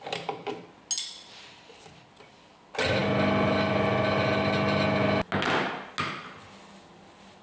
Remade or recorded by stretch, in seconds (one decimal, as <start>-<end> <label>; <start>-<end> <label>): 0.0-7.4 recorded